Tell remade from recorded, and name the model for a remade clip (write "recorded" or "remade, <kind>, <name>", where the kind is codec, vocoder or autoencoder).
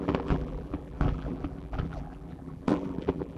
remade, vocoder, BigVGAN v2